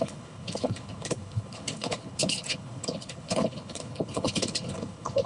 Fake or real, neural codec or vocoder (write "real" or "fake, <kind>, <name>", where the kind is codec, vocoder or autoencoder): fake, codec, HILCodec